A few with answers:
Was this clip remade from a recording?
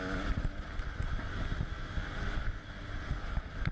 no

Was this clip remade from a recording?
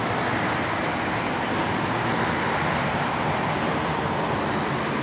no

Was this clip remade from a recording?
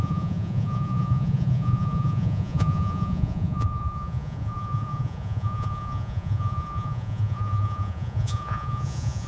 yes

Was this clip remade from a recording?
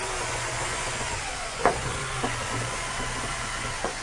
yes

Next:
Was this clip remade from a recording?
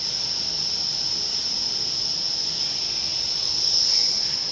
no